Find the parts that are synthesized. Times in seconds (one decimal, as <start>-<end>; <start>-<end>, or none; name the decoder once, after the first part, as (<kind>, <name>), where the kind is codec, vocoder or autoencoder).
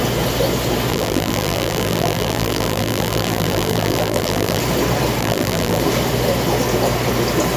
0.9-4.6 (vocoder, BigVGAN v2); 5.2-5.8